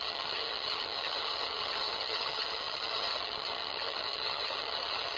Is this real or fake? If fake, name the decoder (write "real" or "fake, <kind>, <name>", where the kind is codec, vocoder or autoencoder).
fake, vocoder, HiFi-GAN